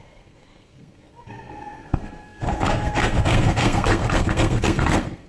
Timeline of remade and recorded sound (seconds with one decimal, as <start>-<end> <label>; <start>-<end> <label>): 0.0-5.3 remade